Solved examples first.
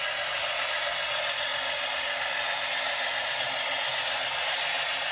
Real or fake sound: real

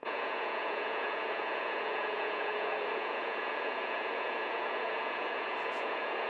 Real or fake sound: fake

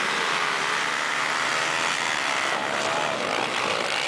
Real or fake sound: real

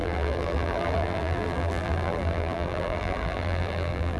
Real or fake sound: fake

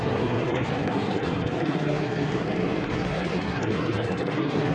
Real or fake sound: fake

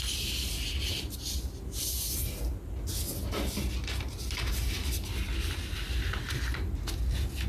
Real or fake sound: real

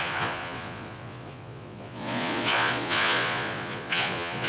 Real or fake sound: fake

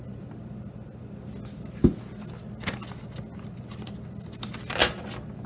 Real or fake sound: real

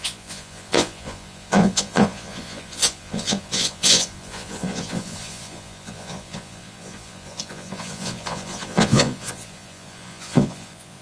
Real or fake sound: fake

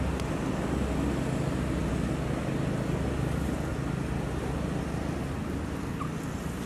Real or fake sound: real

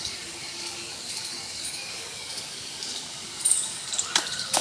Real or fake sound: fake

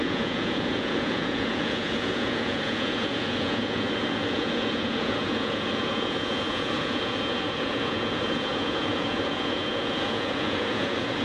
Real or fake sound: fake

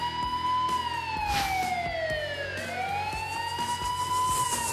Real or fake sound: real